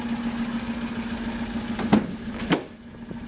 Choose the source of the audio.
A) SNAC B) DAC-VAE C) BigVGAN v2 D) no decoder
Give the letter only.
D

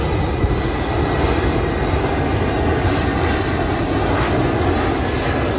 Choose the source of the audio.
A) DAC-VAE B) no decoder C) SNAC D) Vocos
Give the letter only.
B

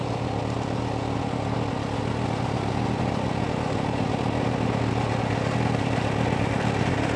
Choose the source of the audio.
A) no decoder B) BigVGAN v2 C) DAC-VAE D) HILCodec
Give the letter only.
A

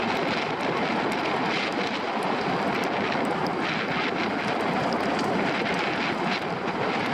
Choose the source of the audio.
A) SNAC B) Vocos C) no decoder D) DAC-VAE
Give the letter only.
C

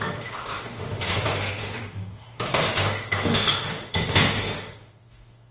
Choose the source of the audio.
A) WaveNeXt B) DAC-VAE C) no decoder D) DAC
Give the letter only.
B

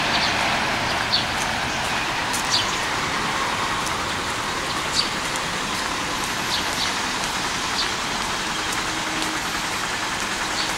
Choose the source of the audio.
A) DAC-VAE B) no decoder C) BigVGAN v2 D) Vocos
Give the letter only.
B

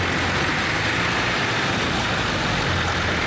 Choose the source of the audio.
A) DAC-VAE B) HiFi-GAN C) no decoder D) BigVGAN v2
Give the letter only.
C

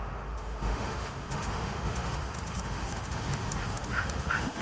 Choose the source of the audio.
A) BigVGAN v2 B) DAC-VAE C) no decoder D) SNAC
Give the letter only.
B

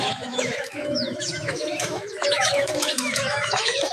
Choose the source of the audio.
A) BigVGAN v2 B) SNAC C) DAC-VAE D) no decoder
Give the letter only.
C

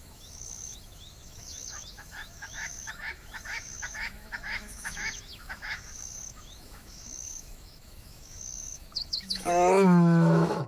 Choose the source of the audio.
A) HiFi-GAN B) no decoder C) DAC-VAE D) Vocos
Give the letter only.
C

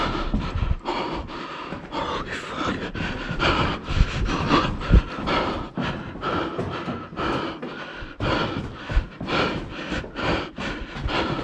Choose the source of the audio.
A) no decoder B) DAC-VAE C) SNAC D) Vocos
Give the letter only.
A